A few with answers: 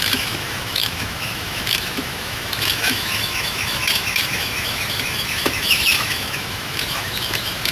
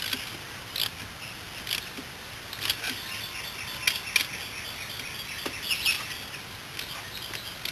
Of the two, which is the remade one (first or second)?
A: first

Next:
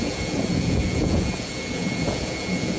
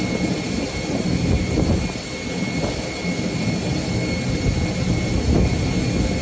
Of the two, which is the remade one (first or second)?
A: first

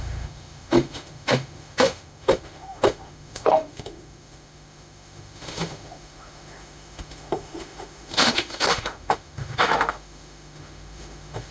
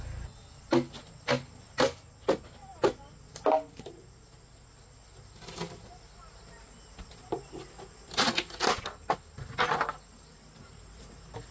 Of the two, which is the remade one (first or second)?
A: first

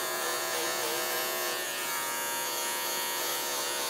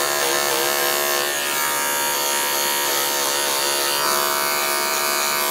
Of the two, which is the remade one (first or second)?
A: first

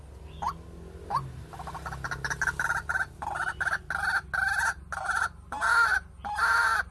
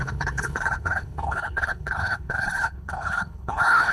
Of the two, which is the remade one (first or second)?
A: second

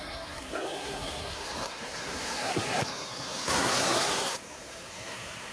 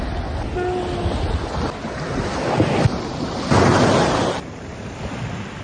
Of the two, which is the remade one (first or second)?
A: first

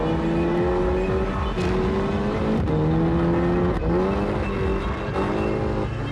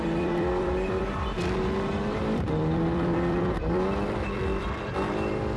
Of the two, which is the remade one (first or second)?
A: second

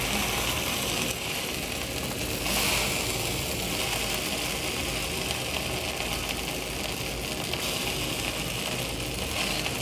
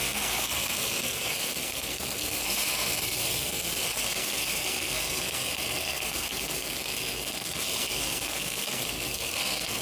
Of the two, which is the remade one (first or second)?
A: second